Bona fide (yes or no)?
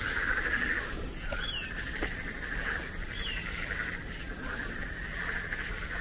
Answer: no